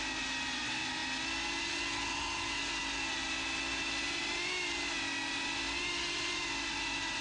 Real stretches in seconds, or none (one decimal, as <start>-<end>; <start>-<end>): 0.0-7.2